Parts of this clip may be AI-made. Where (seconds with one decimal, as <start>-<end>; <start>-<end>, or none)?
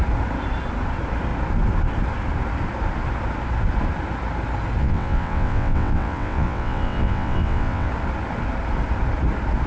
4.8-7.9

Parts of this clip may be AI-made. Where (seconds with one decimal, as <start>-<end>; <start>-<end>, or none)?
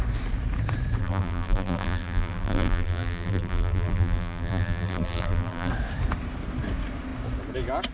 1.0-5.7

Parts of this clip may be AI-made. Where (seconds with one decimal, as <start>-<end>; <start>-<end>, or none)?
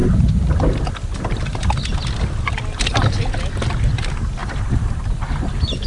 4.4-4.9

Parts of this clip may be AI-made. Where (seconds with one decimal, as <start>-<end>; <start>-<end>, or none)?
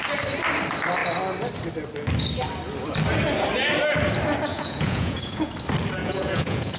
4.5-5.5; 6.0-6.8